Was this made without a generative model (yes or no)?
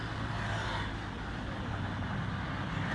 yes